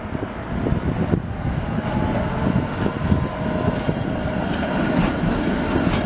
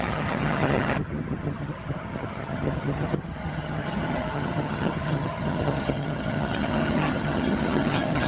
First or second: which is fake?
second